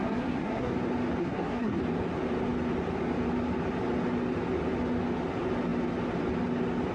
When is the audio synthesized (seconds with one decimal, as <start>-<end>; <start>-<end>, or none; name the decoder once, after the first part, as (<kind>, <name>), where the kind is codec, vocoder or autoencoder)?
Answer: 0.0-0.7 (codec, SNAC); 1.2-1.8